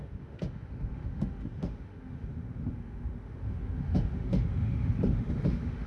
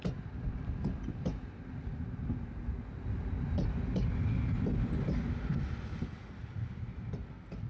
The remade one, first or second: first